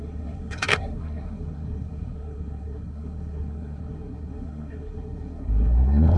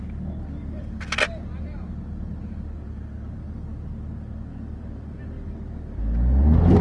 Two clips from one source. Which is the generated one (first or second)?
first